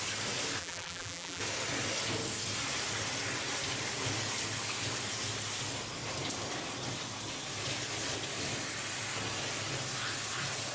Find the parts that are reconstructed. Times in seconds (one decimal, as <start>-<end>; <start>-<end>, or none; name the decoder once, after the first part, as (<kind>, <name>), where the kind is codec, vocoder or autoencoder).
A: 0.6-1.4 (vocoder, BigVGAN v2)